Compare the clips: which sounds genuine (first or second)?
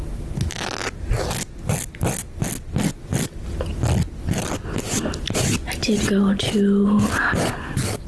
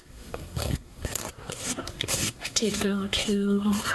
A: first